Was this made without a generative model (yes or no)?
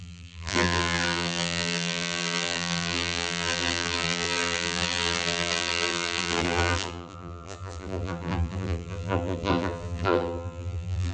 no